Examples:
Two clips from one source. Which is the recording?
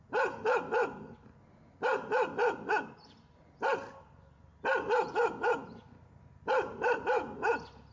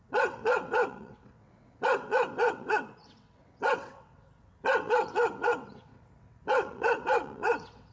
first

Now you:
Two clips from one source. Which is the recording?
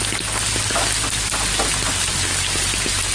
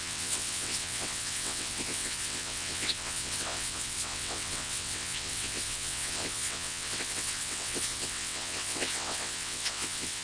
first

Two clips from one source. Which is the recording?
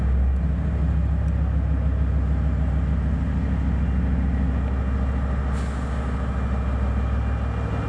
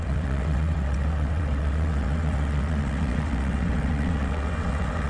first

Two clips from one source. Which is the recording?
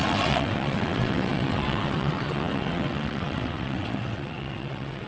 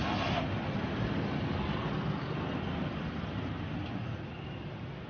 second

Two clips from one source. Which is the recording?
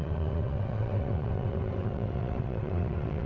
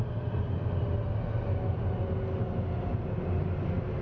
second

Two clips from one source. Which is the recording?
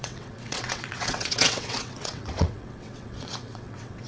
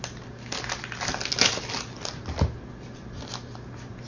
second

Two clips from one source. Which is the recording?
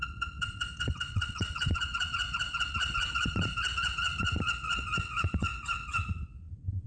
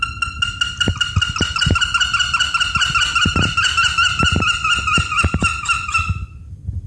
second